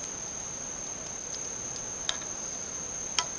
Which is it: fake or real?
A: real